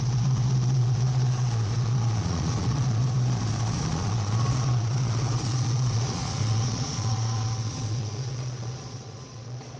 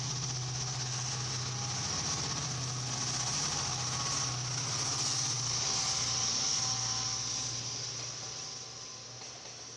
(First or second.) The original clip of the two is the second